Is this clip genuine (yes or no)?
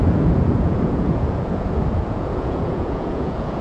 no